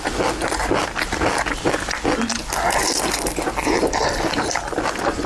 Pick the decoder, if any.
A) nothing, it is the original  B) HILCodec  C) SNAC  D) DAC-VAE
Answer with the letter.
A